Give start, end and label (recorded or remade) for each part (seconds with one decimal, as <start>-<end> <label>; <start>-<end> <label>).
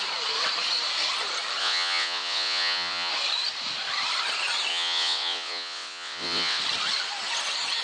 0.0-1.6 recorded; 1.6-3.1 remade; 3.1-4.7 recorded; 4.7-6.6 remade; 6.6-7.8 recorded